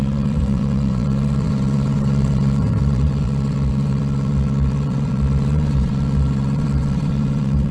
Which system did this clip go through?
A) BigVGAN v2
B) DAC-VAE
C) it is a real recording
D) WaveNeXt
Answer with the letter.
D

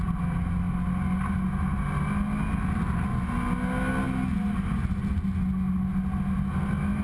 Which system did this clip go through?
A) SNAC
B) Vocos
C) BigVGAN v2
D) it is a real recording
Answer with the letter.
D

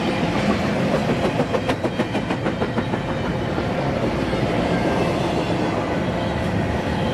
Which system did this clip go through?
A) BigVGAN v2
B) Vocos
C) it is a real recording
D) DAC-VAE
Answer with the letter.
C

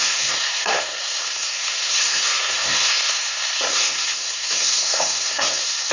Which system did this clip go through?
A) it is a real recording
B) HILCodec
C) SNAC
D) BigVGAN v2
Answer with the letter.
C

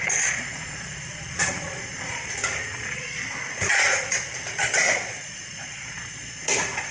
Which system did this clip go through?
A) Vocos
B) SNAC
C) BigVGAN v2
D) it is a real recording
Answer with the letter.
A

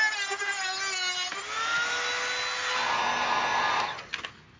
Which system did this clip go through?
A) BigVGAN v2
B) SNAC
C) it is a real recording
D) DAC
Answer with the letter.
C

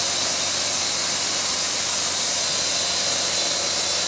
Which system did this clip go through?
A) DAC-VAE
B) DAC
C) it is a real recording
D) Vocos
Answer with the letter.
C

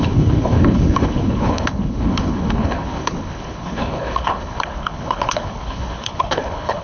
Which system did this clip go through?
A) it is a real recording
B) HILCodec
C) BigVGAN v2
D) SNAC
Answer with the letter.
B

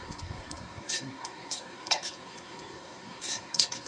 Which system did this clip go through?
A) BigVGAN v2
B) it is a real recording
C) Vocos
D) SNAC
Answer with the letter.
D